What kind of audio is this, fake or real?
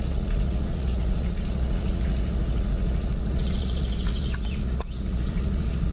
fake